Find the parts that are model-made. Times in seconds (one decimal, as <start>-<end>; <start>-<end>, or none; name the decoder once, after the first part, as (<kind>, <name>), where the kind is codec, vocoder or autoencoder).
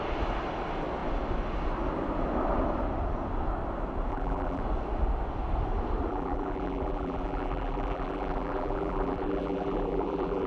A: 4.1-4.6 (vocoder, BigVGAN v2); 6.1-10.5